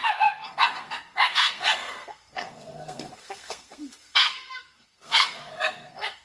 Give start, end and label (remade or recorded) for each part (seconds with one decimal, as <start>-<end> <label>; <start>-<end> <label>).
0.0-6.2 remade